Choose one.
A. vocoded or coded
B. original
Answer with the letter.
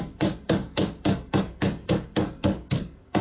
A